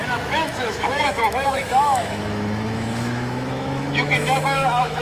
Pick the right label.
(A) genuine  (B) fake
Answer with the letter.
B